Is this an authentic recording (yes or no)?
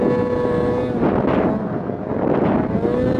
yes